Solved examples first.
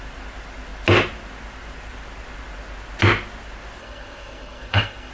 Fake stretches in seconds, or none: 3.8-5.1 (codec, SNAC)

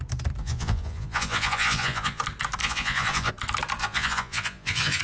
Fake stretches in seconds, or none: 0.4-2.2 (vocoder, Vocos); 2.6-3.3; 3.8-5.0

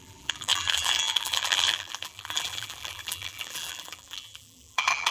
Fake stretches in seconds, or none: 0.0-5.1 (vocoder, BigVGAN v2)

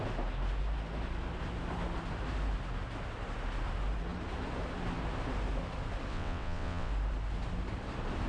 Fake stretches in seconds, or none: 6.1-6.9 (vocoder, WaveNeXt)

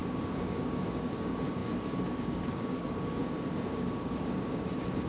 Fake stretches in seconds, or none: 0.0-5.1 (codec, DAC)